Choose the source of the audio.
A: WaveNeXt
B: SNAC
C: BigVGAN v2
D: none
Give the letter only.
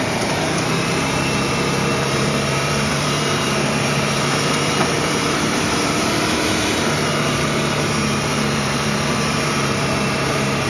C